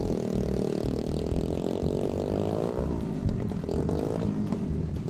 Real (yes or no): no